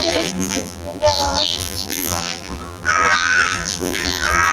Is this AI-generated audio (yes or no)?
yes